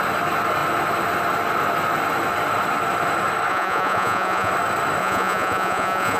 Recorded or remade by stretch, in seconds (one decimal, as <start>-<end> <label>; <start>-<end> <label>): 0.0-3.5 recorded; 3.5-4.5 remade; 4.5-5.0 recorded; 5.0-6.2 remade